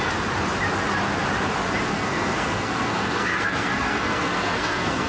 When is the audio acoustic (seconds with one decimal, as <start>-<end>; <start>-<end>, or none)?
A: 0.0-1.9

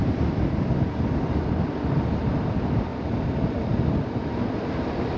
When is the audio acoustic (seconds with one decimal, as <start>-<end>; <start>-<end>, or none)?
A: 0.0-5.2